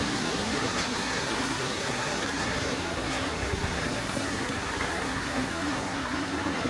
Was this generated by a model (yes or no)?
yes